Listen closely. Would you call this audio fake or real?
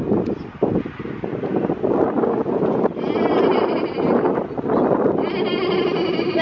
real